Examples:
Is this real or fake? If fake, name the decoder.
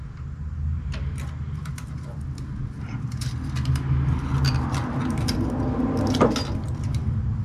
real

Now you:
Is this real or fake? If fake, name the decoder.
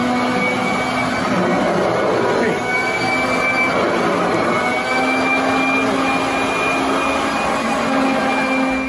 real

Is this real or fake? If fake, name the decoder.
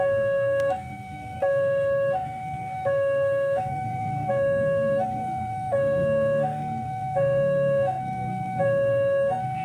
fake, codec, SNAC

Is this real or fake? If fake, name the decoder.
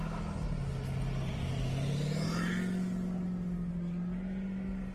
real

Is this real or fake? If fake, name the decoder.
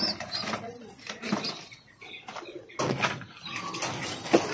real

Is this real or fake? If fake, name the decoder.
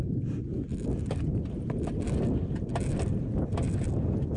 real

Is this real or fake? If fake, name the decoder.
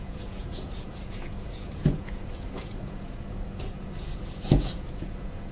fake, vocoder, Vocos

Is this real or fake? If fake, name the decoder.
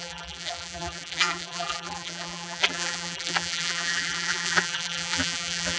fake, vocoder, BigVGAN v2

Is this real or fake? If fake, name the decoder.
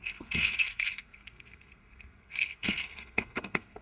fake, codec, SNAC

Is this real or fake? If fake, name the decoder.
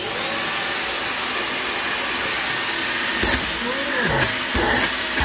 real